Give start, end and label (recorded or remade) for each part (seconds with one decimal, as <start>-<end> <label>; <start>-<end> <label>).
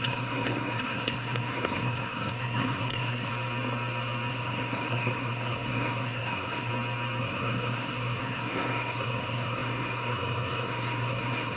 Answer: 0.0-3.3 remade; 3.3-4.3 recorded; 4.3-6.7 remade; 6.7-7.2 recorded; 7.2-11.6 remade